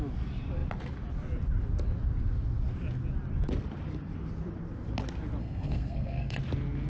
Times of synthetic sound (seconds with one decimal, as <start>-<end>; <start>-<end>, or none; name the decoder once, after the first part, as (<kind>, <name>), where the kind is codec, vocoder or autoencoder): 5.4-6.4 (codec, SNAC)